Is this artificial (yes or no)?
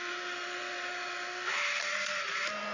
no